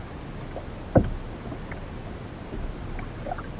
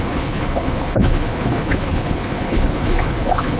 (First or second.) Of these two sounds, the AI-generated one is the second